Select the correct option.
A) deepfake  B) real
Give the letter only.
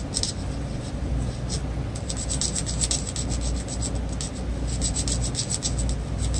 B